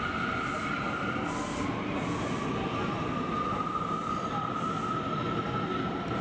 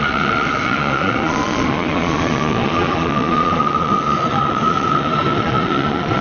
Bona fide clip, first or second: first